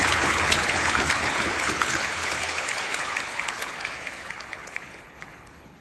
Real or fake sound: fake